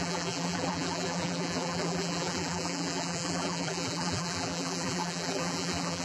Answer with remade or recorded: remade